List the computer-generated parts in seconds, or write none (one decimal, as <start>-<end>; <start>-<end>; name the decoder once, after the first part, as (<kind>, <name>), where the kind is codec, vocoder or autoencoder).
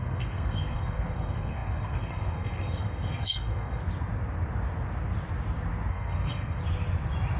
0.0-3.8 (codec, SNAC); 5.9-6.6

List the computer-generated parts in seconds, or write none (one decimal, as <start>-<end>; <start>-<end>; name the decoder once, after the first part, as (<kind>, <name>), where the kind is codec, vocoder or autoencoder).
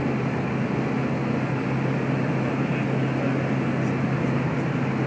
none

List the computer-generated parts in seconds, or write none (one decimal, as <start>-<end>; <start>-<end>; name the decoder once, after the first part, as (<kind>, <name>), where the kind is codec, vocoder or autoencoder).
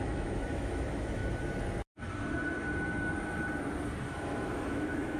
0.0-1.2 (autoencoder, DAC-VAE); 4.2-5.2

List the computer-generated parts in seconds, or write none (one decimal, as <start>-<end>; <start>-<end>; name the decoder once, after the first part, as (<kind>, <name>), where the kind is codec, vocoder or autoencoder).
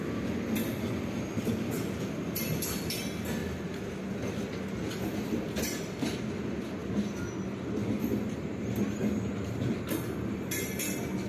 none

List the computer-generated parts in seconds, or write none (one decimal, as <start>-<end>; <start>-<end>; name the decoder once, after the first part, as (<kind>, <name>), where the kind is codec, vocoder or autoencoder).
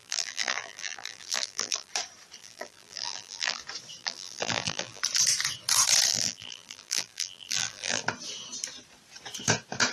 0.0-1.9 (vocoder, BigVGAN v2); 2.4-3.6; 4.0-5.0; 6.1-8.0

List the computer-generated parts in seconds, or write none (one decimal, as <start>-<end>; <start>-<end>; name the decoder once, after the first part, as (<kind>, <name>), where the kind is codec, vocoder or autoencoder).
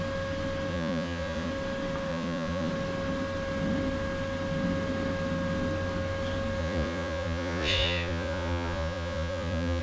0.7-1.5 (vocoder, Vocos); 2.1-2.7; 6.6-9.8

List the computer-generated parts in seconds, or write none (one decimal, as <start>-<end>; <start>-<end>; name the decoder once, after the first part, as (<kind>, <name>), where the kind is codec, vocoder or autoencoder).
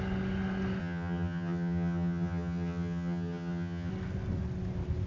0.8-3.9 (vocoder, HiFi-GAN)